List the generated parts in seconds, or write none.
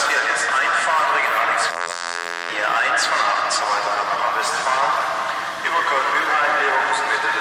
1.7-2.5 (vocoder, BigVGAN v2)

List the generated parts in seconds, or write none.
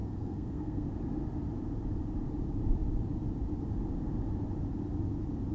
0.0-0.9 (codec, SNAC)